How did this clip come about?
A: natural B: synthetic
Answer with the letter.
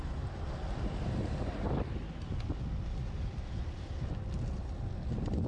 A